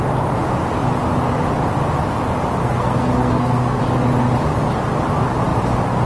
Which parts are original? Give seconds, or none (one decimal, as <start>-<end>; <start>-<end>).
0.0-2.6; 3.8-6.1